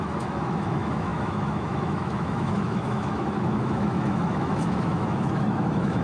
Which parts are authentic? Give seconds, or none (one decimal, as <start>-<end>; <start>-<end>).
none